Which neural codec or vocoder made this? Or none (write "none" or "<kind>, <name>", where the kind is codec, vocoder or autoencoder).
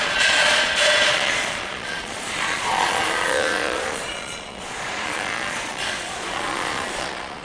vocoder, Vocos